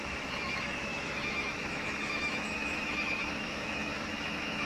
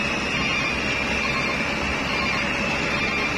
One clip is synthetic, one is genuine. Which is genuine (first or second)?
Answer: second